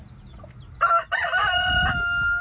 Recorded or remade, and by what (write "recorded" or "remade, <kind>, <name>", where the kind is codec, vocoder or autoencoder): recorded